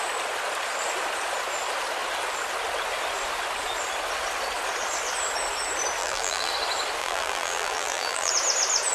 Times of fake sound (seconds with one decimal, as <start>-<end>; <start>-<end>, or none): 6.0-6.5; 7.0-8.3